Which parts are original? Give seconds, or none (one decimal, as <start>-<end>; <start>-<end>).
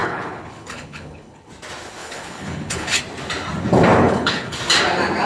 1.5-2.0; 3.0-4.0; 4.6-5.3